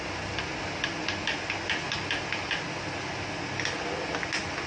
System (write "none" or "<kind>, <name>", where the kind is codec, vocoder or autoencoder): none